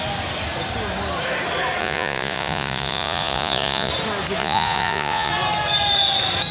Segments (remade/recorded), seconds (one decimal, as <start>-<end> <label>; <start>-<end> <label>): 0.0-1.8 recorded; 1.8-3.9 remade; 3.9-4.4 recorded; 4.4-5.3 remade; 5.3-6.5 recorded